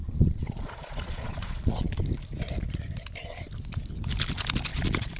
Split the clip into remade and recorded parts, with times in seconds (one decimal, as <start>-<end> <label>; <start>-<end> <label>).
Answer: 0.0-2.0 remade; 2.0-4.7 recorded; 4.7-5.2 remade